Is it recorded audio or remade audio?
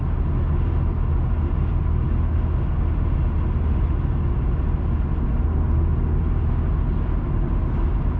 recorded